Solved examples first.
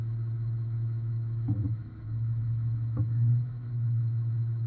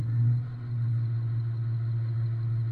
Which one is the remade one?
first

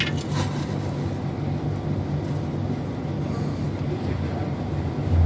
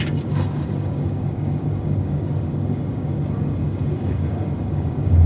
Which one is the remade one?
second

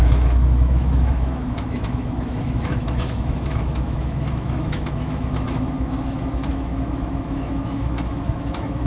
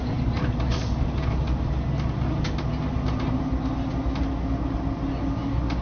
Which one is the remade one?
first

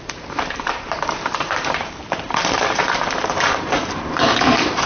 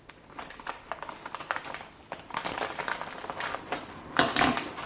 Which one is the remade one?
first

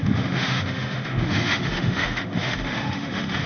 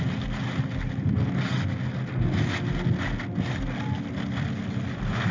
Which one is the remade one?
first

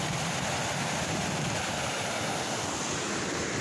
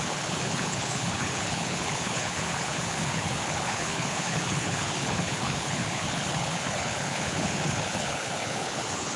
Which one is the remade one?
second